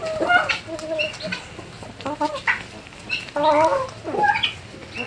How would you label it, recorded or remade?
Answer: recorded